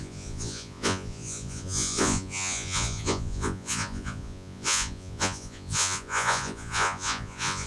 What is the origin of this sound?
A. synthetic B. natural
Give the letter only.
A